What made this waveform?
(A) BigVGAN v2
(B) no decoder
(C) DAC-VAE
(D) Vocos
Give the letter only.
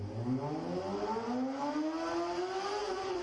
B